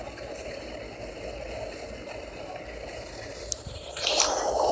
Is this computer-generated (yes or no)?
no